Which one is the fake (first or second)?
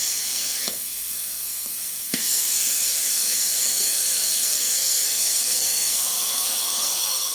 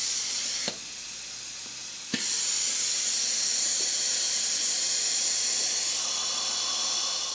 first